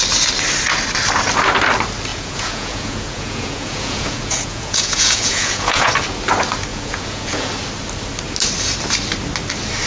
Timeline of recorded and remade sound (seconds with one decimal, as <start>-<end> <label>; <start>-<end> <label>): 0.0-2.1 recorded; 2.1-5.9 remade; 5.9-6.7 recorded; 6.7-7.5 remade; 7.5-9.9 recorded

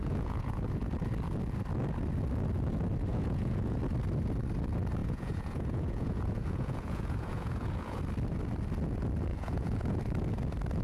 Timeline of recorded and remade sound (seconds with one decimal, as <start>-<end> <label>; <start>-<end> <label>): 0.0-0.9 remade; 0.9-3.1 recorded; 3.1-3.8 remade; 3.8-5.0 recorded; 5.0-8.0 remade; 8.0-9.3 recorded; 9.3-10.0 remade; 10.0-10.8 recorded

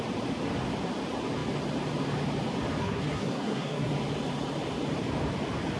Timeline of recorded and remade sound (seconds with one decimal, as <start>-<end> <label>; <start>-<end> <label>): 0.0-2.8 recorded; 2.8-3.9 remade; 3.9-5.8 recorded

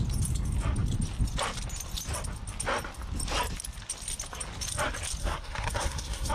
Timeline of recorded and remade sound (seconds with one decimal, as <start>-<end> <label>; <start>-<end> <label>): 0.0-5.2 recorded; 5.2-6.3 remade

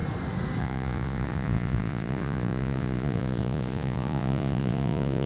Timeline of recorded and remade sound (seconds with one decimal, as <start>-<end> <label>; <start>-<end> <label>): 0.0-0.6 recorded; 0.6-5.3 remade

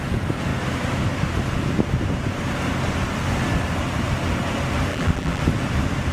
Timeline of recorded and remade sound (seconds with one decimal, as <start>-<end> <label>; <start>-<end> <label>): 0.0-4.9 recorded; 4.9-5.4 remade; 5.4-6.1 recorded

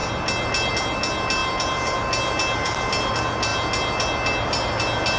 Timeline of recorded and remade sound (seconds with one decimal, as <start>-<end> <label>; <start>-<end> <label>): 0.0-5.2 recorded